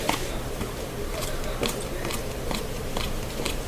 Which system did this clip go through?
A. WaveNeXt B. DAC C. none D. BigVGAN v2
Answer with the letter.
D